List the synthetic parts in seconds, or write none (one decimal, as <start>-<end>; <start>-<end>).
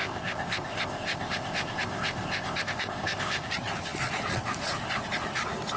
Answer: 0.0-3.5